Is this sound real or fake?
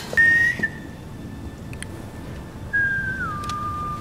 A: real